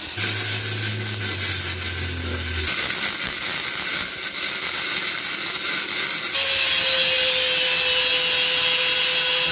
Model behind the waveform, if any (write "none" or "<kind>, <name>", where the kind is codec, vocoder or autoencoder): none